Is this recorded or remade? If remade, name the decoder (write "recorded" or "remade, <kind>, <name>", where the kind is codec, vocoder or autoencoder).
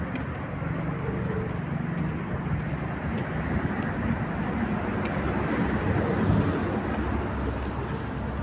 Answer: recorded